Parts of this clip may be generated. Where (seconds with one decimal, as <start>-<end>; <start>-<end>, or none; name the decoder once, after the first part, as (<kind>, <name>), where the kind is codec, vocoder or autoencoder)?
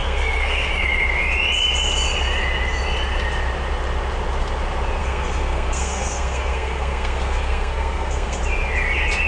0.0-0.7 (codec, SNAC); 5.0-8.4